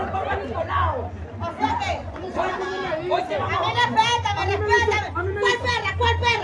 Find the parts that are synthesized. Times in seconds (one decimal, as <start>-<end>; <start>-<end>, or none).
2.0-2.9

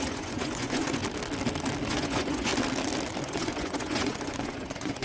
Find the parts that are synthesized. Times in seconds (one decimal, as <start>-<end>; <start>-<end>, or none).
0.0-1.0; 1.9-2.5; 3.2-5.0

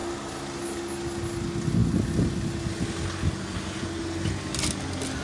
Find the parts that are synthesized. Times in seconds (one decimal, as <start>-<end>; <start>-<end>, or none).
none

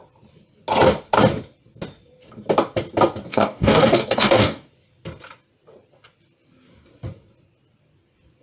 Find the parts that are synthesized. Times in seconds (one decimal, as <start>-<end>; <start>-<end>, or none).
3.3-4.7

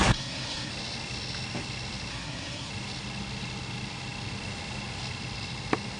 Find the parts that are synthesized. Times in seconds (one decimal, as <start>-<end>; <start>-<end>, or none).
0.0-0.7; 2.1-2.7

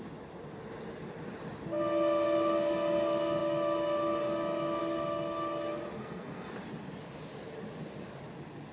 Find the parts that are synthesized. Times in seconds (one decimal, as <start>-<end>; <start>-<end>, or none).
6.0-6.5

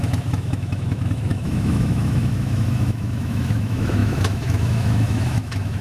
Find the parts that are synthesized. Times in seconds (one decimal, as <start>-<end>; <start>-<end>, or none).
0.0-5.8